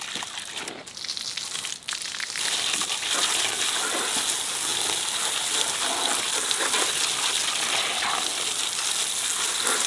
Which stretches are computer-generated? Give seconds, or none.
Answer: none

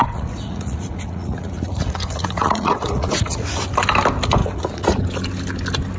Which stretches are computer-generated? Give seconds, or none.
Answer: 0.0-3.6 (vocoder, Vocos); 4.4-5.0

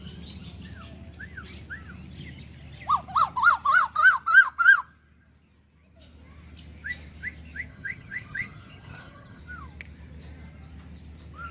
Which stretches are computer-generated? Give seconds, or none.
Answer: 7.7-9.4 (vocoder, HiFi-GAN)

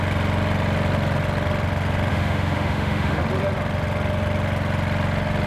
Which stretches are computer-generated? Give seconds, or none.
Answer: 2.1-3.2 (autoencoder, DAC-VAE)